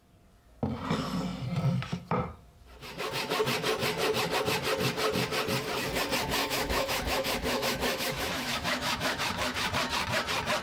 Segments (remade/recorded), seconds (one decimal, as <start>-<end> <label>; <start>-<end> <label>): 0.0-6.4 recorded; 6.4-9.7 remade; 9.7-10.6 recorded